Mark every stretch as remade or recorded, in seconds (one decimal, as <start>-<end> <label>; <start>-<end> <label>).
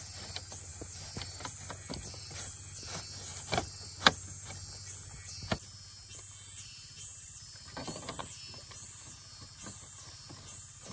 0.0-3.3 recorded; 3.3-3.9 remade; 3.9-7.1 recorded; 7.1-8.2 remade; 8.2-10.9 recorded